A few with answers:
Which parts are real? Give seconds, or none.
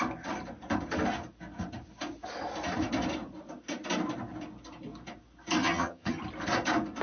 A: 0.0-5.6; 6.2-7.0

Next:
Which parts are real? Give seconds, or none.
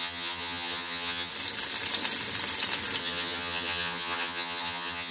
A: 1.3-3.0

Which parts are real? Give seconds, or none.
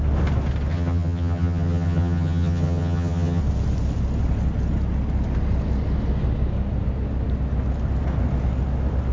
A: 0.0-0.7; 3.4-9.1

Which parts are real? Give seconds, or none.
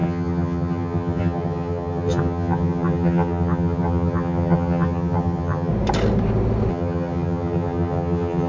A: 5.7-6.7